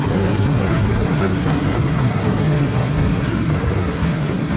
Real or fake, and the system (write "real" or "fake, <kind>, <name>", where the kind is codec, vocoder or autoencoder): fake, codec, SNAC